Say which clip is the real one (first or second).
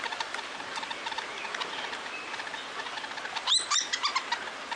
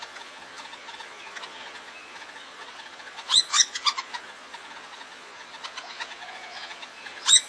first